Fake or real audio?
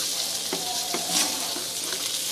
real